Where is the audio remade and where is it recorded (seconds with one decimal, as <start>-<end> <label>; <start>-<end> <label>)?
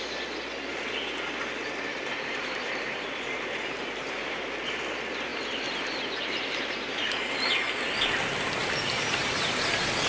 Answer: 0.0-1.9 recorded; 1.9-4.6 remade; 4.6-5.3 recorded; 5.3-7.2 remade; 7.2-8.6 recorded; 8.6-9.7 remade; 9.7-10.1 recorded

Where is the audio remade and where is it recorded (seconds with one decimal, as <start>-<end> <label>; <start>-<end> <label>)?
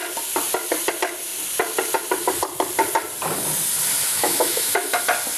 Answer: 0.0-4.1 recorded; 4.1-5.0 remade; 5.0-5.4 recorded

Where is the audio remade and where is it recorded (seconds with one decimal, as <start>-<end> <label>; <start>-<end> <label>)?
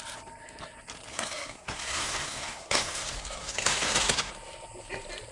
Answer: 0.0-1.1 recorded; 1.1-4.3 remade; 4.3-5.3 recorded